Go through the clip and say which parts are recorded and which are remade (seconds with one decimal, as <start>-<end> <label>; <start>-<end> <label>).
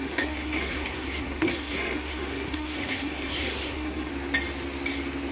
0.0-4.1 remade; 4.1-5.3 recorded